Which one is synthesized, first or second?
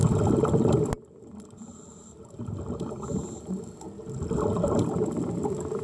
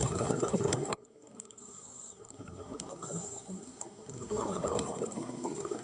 second